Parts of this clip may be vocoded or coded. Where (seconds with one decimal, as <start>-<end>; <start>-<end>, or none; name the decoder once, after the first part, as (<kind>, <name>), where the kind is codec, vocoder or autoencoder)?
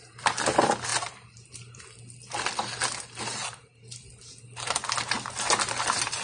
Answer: none